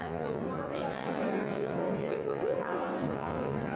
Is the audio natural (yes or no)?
no